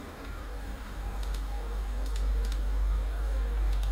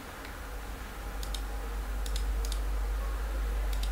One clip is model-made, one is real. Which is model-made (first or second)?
first